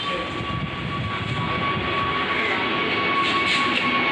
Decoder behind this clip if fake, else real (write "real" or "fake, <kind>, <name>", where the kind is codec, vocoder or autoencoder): real